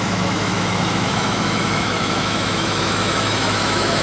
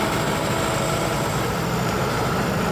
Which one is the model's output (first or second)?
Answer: first